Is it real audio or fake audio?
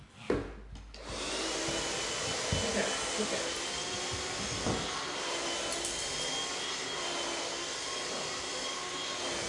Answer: real